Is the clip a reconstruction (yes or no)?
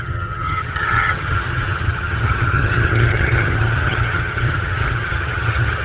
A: yes